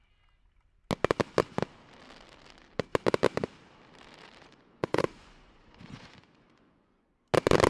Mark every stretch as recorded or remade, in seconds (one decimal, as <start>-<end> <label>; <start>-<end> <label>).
0.0-4.4 recorded; 4.4-7.1 remade; 7.1-7.7 recorded